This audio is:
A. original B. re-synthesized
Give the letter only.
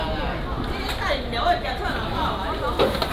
A